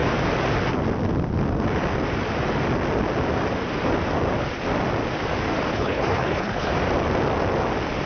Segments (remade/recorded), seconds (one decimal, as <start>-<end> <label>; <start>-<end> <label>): 0.0-5.7 recorded; 5.7-6.7 remade; 6.7-8.1 recorded